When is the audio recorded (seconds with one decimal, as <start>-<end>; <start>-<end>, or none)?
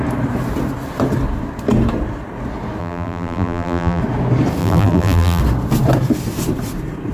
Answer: 0.0-2.8; 4.0-4.6; 5.4-7.1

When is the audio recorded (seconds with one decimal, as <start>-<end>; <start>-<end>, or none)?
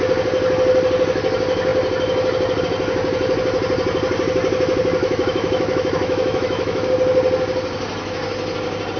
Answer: 0.0-5.0; 6.9-9.0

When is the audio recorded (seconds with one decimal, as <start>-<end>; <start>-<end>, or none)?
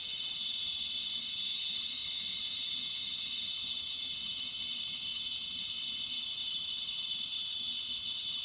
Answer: none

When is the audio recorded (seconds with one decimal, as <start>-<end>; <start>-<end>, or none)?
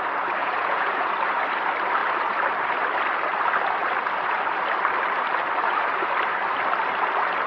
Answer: 0.0-0.4; 1.1-7.5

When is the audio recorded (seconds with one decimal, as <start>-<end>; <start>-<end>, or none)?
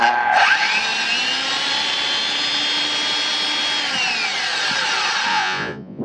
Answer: 0.0-5.3